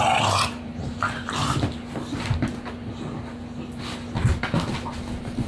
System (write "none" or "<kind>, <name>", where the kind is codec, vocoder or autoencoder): none